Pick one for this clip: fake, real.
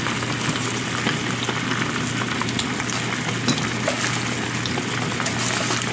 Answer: real